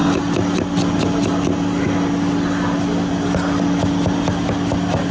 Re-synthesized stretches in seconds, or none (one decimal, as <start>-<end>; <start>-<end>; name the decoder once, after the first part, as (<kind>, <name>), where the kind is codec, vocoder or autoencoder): none